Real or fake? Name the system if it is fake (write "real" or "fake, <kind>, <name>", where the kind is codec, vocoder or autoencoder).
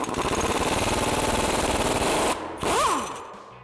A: real